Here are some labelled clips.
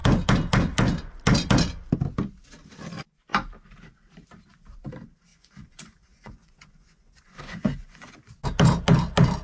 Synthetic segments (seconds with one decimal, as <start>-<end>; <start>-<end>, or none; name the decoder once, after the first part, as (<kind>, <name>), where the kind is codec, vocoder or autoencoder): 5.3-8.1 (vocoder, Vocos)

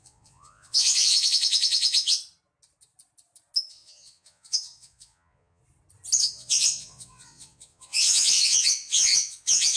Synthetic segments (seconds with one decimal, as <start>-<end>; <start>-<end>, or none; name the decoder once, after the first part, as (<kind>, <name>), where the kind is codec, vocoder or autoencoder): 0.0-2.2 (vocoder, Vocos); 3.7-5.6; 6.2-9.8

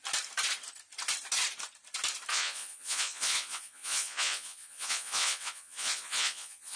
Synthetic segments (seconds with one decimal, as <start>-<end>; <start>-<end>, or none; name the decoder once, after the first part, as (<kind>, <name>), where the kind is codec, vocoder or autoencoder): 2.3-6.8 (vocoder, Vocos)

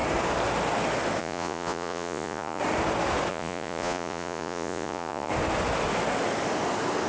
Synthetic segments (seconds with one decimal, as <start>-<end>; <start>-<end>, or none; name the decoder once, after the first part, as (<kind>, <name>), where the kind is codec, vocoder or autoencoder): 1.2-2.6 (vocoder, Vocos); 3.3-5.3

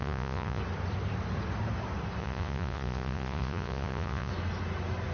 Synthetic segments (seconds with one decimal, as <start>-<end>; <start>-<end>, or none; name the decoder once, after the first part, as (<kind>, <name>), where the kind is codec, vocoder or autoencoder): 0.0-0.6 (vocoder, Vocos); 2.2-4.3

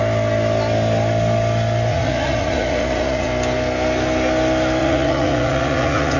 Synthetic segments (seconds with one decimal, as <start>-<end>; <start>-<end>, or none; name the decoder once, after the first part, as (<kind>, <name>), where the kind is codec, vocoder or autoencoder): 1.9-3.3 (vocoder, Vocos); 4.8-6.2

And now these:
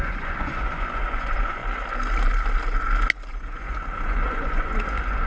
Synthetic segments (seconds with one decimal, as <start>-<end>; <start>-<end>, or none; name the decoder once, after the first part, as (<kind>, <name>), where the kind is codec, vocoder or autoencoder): 0.0-1.6 (vocoder, Vocos); 3.3-5.3